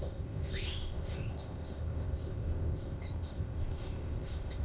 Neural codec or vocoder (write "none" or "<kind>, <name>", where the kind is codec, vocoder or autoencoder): codec, ZipCodec